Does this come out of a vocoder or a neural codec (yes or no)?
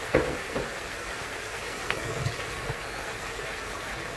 yes